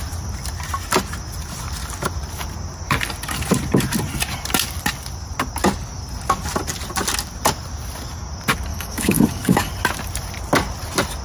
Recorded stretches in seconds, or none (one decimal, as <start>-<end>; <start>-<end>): 0.0-8.7; 9.7-11.2